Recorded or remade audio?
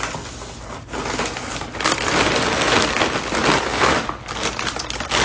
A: recorded